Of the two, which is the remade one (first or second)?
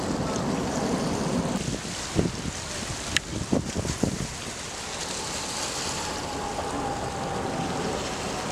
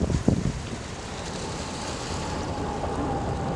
second